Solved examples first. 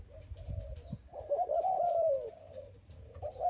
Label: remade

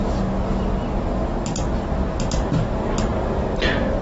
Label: recorded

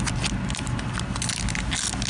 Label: recorded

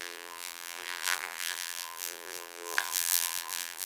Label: remade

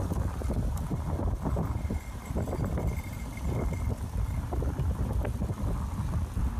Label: remade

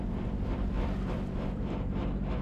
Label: remade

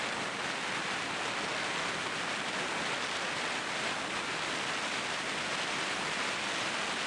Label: recorded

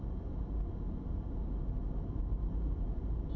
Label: recorded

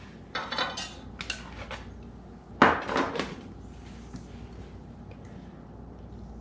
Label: recorded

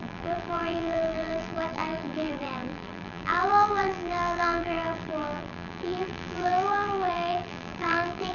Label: remade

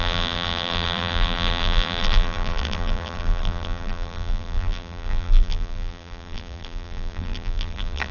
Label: remade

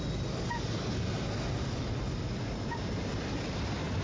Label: recorded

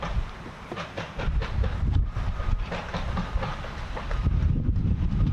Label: remade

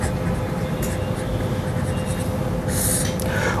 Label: recorded